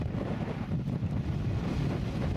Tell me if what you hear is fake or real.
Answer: real